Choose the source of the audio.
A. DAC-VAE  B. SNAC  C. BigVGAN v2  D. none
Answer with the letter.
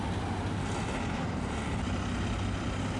D